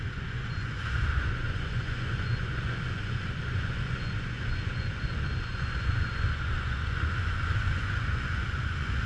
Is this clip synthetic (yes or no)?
yes